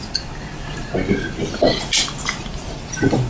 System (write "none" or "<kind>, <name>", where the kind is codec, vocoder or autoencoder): none